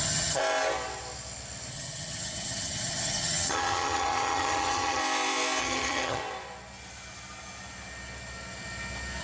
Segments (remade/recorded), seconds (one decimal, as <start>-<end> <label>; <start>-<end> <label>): 0.0-0.4 remade; 0.4-1.7 recorded; 1.7-5.0 remade; 5.0-5.6 recorded; 5.6-6.2 remade; 6.2-9.2 recorded